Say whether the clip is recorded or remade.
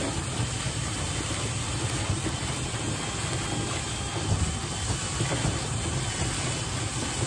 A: recorded